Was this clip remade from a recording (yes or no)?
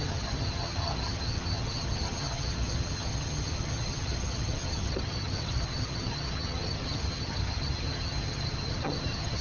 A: yes